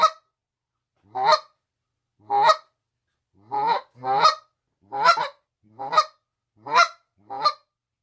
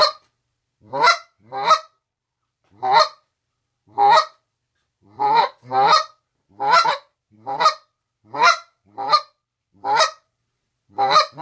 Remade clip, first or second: second